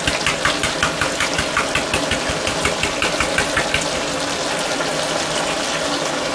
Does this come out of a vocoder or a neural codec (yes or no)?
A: no